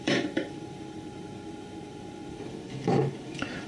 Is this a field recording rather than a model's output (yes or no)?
no